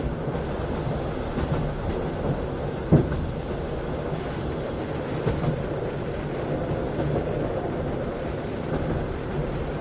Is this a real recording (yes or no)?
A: yes